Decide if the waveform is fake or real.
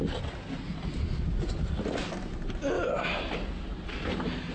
real